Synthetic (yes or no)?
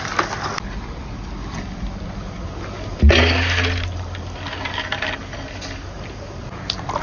no